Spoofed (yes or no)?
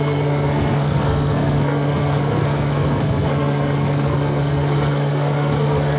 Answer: yes